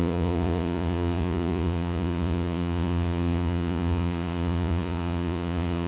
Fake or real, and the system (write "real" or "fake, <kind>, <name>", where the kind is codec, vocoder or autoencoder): fake, vocoder, Vocos